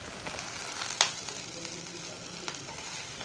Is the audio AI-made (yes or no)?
no